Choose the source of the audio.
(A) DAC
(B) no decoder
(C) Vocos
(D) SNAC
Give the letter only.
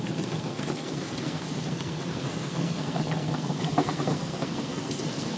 D